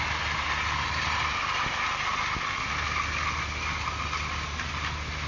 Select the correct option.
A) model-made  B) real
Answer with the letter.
B